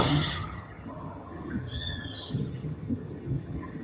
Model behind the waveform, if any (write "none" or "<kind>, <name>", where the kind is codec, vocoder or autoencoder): vocoder, HiFi-GAN